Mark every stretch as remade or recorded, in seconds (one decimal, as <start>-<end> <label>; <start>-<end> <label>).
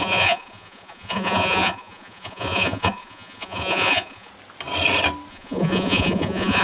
0.0-4.3 remade; 4.3-5.3 recorded; 5.3-6.6 remade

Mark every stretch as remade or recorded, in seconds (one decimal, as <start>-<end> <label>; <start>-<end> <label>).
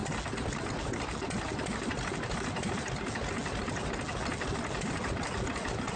0.0-6.0 recorded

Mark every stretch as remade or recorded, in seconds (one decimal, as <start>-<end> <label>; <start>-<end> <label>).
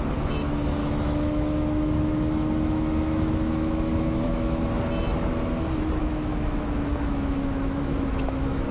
0.0-0.8 recorded; 0.8-4.6 remade; 4.6-6.0 recorded; 6.0-8.7 remade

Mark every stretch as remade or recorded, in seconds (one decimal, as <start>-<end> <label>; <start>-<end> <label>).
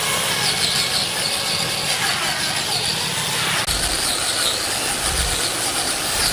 0.0-6.3 recorded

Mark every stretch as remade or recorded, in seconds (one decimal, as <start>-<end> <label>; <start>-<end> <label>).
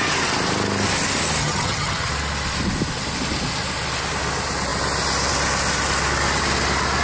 0.0-1.4 recorded; 1.4-2.1 remade; 2.1-7.0 recorded